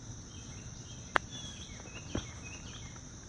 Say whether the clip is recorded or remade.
recorded